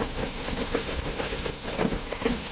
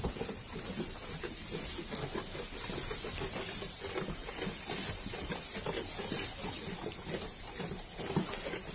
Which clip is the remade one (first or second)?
first